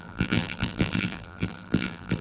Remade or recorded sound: remade